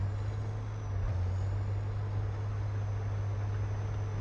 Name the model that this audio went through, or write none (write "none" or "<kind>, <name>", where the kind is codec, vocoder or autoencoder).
none